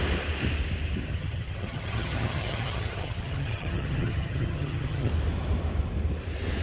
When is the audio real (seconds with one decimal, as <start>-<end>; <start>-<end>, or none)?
0.0-1.1; 5.1-6.6